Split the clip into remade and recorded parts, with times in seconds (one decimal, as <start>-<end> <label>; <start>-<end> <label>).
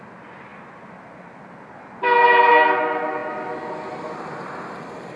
0.0-5.2 recorded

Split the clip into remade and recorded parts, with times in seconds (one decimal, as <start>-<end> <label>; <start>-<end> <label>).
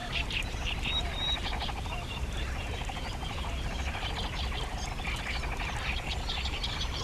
0.0-4.1 remade; 4.1-7.0 recorded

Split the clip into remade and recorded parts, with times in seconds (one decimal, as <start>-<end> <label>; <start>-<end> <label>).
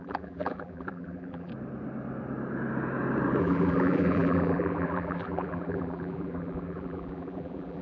0.0-1.5 remade; 1.5-3.4 recorded; 3.4-7.8 remade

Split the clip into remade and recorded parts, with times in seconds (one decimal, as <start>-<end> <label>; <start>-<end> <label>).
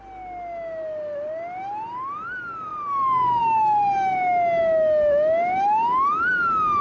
0.0-2.7 recorded; 2.7-3.4 remade; 3.4-6.8 recorded